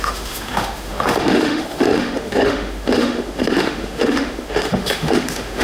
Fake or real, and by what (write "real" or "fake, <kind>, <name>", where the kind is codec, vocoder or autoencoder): fake, autoencoder, DAC-VAE